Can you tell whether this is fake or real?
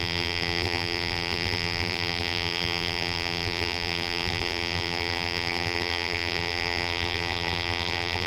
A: fake